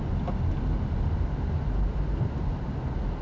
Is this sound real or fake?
real